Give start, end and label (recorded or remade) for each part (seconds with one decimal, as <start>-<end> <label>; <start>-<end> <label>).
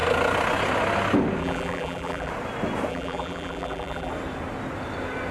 0.0-1.4 recorded; 1.4-2.3 remade; 2.3-2.9 recorded; 2.9-4.1 remade; 4.1-5.3 recorded